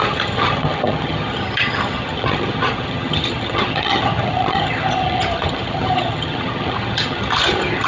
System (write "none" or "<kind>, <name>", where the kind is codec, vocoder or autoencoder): vocoder, HiFi-GAN